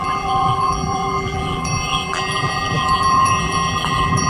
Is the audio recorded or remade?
remade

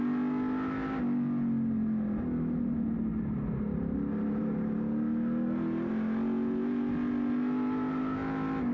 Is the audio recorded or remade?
recorded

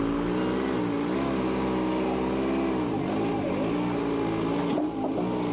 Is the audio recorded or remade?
recorded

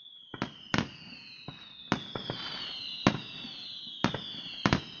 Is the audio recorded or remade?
recorded